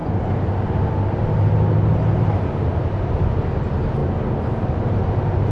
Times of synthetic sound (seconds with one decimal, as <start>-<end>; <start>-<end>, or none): none